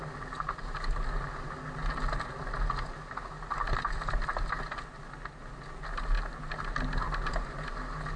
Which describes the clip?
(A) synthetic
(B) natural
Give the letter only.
B